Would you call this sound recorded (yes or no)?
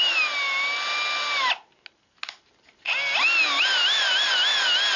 yes